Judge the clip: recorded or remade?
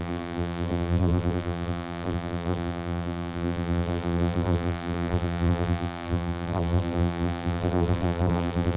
remade